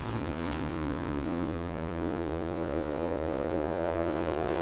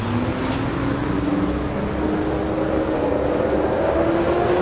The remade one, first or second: first